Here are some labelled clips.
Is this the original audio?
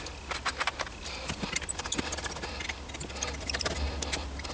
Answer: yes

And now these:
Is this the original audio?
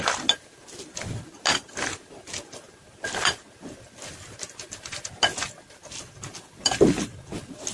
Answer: yes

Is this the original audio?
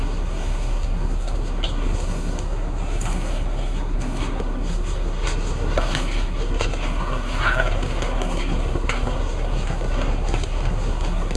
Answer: no